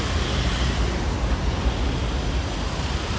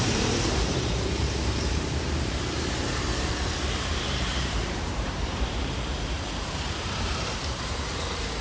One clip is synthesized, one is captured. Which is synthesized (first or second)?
second